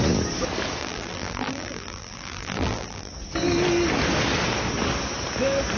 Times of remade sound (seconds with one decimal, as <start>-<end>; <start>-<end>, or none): 0.8-3.1